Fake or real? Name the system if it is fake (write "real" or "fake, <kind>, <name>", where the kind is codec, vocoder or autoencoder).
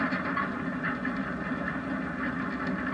real